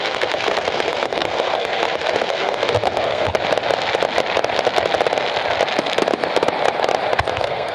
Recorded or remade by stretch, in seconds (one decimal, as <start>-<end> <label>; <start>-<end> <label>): 0.0-3.3 remade; 3.3-7.3 recorded; 7.3-7.7 remade